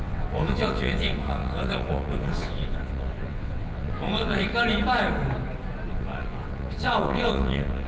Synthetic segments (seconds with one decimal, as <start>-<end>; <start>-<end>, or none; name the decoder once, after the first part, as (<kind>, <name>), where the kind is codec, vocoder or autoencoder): 0.0-4.5 (vocoder, WaveNeXt); 5.9-7.9